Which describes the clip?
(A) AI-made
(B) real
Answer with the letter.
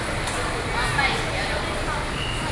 B